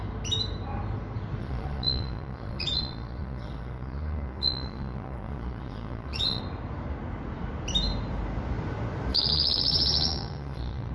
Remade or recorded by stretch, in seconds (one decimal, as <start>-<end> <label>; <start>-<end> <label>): 0.0-1.4 recorded; 1.4-6.4 remade; 6.4-9.1 recorded; 9.1-10.9 remade